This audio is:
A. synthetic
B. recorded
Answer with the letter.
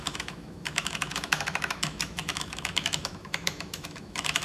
A